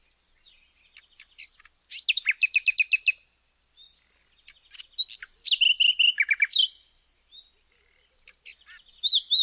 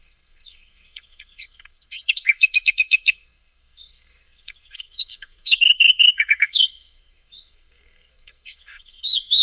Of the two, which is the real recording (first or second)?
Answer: first